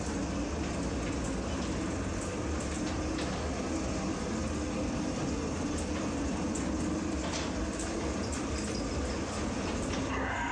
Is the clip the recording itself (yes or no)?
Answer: yes